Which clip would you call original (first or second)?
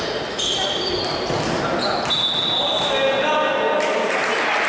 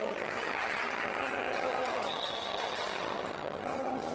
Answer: first